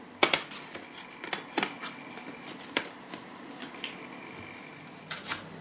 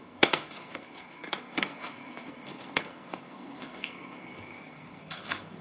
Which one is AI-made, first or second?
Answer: second